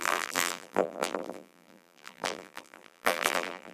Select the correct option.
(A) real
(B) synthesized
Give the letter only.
B